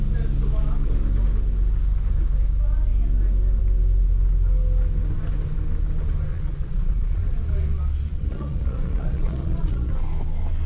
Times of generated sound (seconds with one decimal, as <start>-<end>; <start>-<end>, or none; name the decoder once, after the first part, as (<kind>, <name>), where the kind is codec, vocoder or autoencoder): 6.3-7.4 (vocoder, Vocos); 8.1-9.9